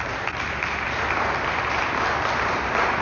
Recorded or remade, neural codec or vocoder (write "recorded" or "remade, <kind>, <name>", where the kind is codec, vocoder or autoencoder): recorded